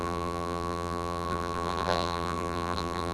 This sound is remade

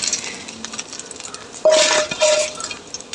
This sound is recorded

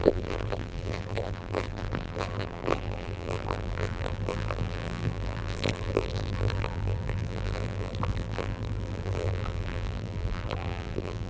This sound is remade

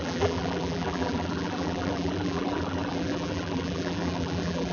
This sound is remade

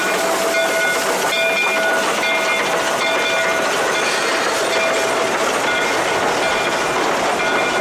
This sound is recorded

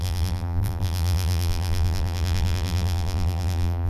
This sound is remade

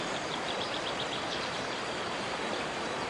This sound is remade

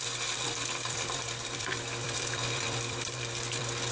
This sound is remade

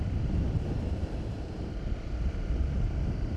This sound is remade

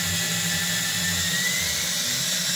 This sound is recorded